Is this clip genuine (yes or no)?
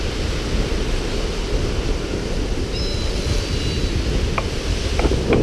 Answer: yes